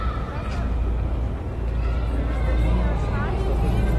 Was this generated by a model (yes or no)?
no